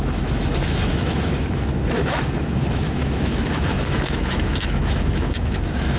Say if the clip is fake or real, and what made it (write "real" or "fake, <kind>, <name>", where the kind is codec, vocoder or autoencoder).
fake, autoencoder, DAC-VAE